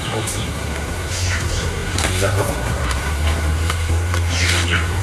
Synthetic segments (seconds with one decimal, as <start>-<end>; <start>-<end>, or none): 0.0-5.0